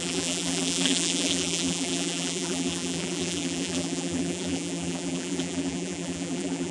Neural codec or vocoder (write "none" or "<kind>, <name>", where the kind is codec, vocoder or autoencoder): vocoder, BigVGAN v2